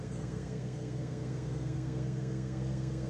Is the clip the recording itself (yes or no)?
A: no